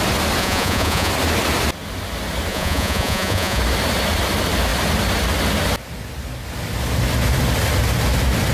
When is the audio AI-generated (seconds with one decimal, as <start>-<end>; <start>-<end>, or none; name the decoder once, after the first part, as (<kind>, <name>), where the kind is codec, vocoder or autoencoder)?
0.4-1.1 (vocoder, Vocos); 2.5-3.6